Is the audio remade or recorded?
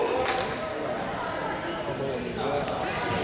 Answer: recorded